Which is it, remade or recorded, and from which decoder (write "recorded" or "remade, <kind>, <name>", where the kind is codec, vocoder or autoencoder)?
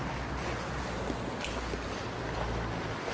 recorded